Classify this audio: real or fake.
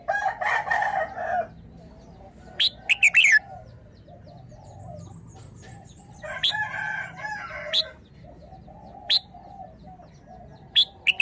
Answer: real